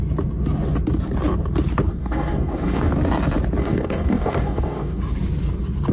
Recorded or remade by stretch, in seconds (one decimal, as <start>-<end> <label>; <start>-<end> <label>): 0.0-1.9 recorded; 1.9-2.9 remade; 2.9-3.6 recorded; 3.6-5.0 remade; 5.0-5.9 recorded